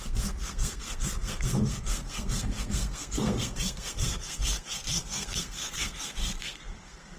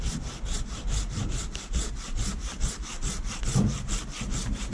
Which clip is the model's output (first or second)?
first